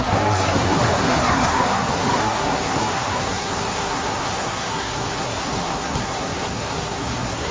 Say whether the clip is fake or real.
fake